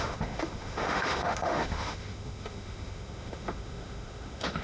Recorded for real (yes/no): no